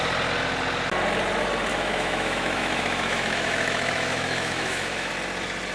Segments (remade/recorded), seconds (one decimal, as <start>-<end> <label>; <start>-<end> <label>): 0.0-1.7 recorded; 1.7-5.1 remade; 5.1-5.7 recorded